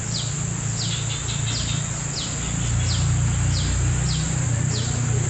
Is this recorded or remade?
recorded